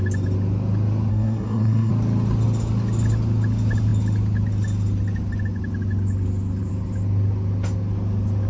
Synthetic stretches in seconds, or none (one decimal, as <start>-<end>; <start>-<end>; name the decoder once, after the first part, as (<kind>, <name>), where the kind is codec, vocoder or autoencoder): 1.1-1.9 (codec, SNAC)